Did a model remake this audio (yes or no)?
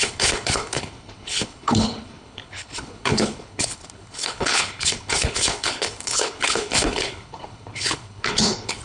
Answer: yes